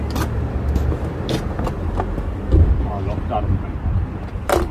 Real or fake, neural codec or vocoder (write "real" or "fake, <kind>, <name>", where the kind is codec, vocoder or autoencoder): real